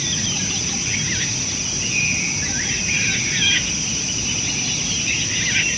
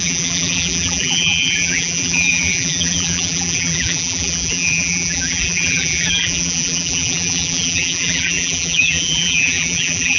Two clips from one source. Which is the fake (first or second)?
second